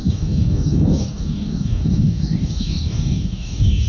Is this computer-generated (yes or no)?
yes